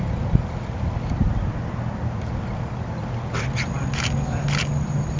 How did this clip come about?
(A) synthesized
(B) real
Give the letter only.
B